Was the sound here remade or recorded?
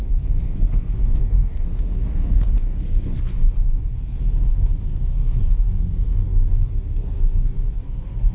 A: remade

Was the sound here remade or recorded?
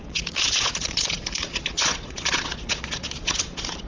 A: remade